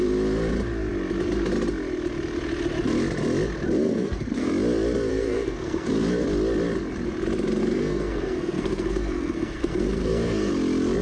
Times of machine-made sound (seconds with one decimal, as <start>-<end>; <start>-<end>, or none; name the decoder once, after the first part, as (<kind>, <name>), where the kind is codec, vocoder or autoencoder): 3.9-4.5 (codec, SNAC); 5.1-5.9; 7.6-10.5